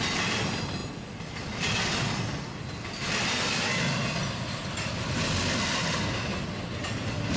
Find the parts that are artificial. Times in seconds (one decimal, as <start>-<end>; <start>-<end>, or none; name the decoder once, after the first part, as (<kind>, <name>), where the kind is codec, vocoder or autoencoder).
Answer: none